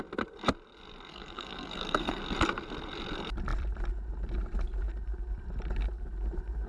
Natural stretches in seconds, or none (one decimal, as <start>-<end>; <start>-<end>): 0.0-1.1; 2.2-6.7